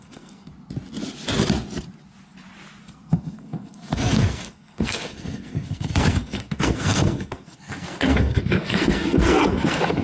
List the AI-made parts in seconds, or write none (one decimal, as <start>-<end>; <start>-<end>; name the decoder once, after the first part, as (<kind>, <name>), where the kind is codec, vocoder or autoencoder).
0.0-0.5 (codec, SNAC); 2.8-10.0